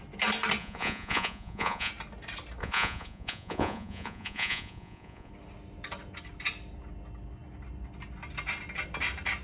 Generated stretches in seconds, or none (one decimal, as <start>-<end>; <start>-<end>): 0.6-1.9; 2.6-5.3